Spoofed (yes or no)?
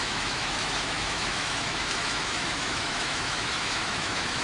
yes